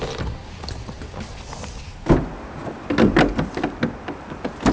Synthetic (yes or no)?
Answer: no